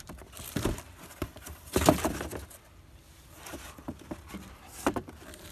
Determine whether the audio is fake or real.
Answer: fake